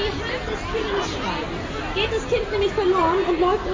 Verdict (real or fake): real